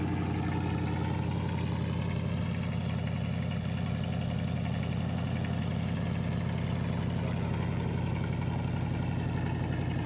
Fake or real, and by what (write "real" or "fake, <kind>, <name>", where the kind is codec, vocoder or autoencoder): real